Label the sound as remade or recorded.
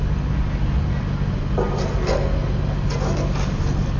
recorded